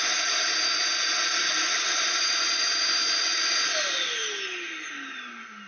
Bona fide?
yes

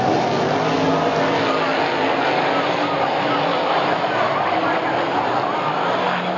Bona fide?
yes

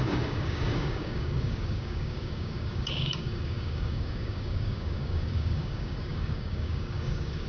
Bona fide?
no